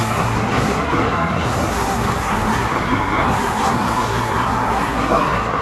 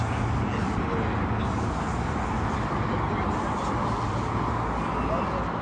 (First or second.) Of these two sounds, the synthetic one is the first